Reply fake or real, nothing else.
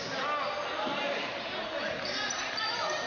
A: real